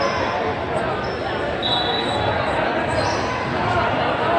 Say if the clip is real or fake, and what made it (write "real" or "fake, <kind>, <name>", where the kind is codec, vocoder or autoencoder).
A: real